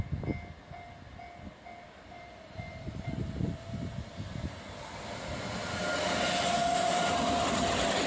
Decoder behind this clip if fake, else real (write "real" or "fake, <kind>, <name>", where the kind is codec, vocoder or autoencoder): real